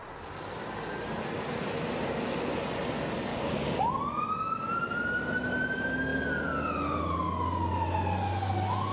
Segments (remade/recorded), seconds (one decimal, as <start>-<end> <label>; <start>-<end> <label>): 0.0-3.3 recorded; 3.3-3.9 remade; 3.9-8.9 recorded